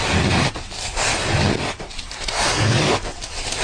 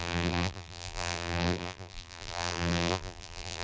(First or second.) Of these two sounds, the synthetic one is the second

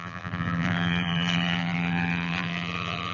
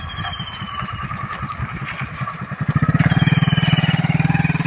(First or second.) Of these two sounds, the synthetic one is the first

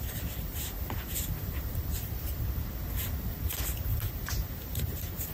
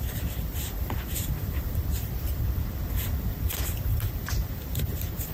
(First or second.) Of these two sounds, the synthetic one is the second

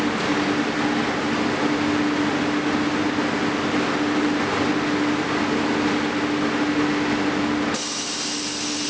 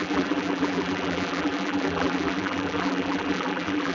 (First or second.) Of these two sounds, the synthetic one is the second